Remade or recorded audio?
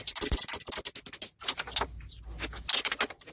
recorded